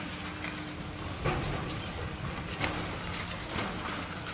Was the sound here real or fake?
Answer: real